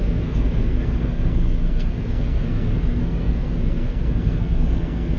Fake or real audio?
fake